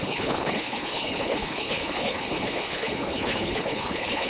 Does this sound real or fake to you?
fake